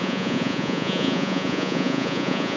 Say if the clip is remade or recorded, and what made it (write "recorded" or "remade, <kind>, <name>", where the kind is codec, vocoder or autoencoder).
remade, vocoder, Vocos